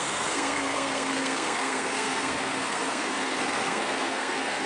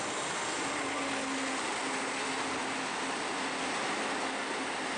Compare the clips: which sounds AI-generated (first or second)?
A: first